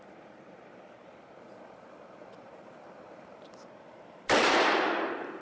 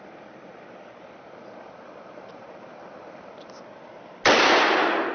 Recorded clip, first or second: second